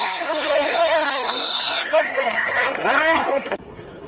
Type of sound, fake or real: fake